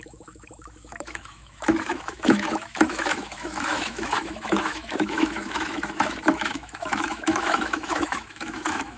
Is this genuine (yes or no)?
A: no